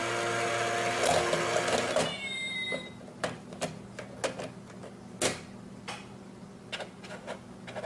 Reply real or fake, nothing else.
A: real